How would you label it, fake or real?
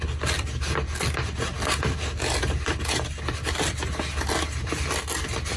real